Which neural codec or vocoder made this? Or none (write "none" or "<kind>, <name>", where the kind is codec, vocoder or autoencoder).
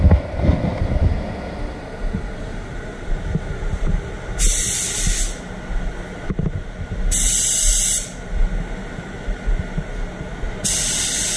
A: none